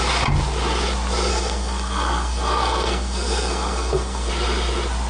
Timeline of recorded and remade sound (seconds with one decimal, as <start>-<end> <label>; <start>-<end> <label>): 0.0-1.3 recorded; 1.3-4.3 remade; 4.3-5.1 recorded